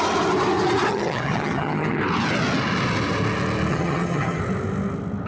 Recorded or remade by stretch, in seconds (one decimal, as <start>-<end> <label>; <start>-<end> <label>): 0.0-0.9 recorded; 0.9-2.0 remade; 2.0-3.7 recorded; 3.7-4.4 remade; 4.4-5.3 recorded